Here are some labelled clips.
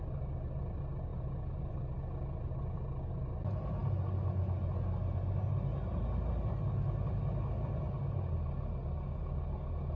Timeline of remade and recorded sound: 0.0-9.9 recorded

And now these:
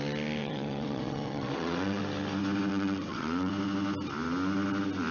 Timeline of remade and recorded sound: 0.0-0.4 recorded; 0.4-2.0 remade; 2.0-2.7 recorded; 2.7-3.5 remade; 3.5-5.1 recorded

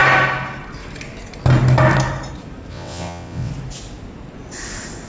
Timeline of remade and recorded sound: 0.0-2.7 recorded; 2.7-3.5 remade; 3.5-5.1 recorded

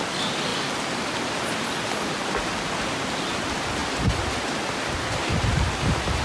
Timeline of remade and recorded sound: 0.0-6.2 recorded

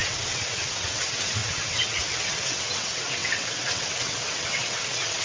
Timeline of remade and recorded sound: 0.0-5.2 remade

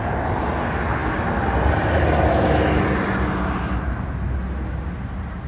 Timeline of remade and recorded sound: 0.0-5.5 recorded